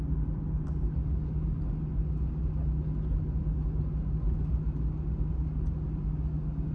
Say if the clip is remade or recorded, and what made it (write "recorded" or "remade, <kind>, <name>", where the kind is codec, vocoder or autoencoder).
recorded